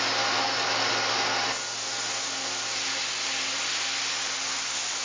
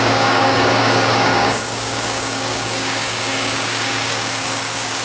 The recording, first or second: first